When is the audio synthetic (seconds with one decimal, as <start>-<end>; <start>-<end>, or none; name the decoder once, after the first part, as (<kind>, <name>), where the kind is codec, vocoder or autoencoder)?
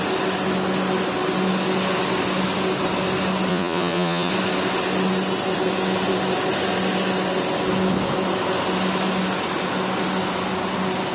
3.5-4.3 (vocoder, Vocos)